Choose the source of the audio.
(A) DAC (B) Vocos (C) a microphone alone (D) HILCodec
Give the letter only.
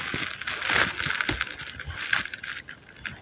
C